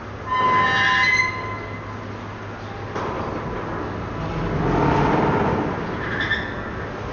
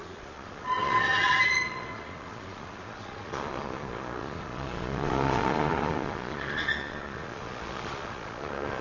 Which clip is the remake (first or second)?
second